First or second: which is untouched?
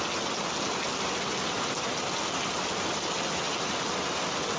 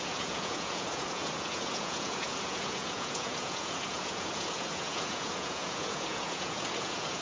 first